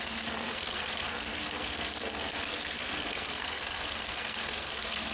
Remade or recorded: remade